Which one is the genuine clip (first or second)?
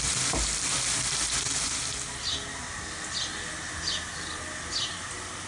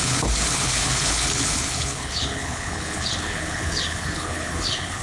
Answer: first